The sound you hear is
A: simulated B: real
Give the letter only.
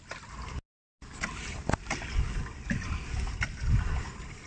B